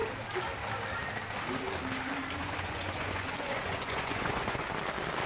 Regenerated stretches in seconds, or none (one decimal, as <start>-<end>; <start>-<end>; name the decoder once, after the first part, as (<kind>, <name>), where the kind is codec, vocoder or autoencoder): 2.4-4.7 (vocoder, Vocos)